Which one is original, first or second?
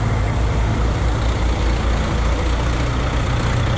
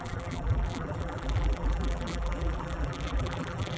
first